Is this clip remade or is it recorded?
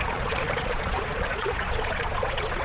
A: remade